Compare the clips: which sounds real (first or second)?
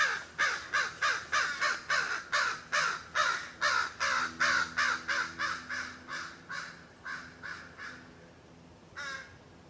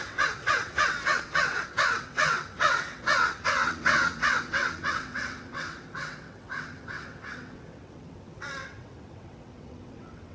first